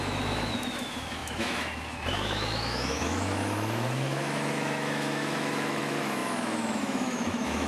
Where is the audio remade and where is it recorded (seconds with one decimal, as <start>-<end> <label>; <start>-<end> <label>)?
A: 0.0-7.7 remade